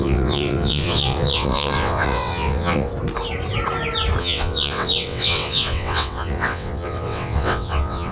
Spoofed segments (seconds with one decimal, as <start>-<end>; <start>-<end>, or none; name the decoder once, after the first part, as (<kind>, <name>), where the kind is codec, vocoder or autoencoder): 0.0-2.9 (vocoder, WaveNeXt); 4.2-8.1